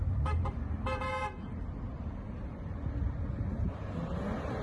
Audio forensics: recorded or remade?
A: recorded